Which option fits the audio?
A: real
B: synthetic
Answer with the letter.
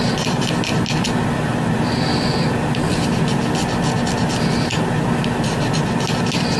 A